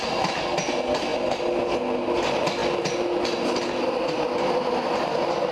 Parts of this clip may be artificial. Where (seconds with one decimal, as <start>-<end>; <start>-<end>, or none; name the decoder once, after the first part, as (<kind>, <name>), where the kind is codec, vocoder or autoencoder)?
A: none